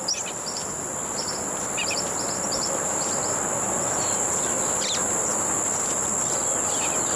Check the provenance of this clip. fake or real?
real